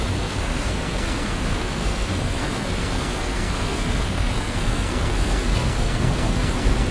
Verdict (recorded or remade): remade